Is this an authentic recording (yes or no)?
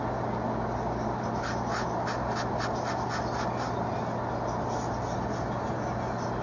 yes